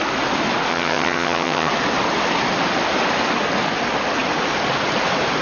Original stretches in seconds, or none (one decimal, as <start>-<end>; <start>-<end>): 0.0-0.7; 1.7-5.4